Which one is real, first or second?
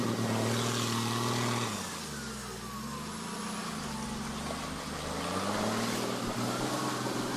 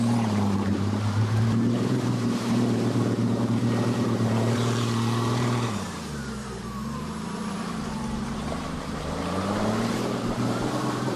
first